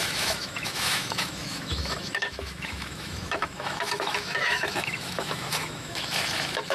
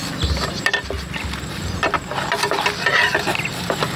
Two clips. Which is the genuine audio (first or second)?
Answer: second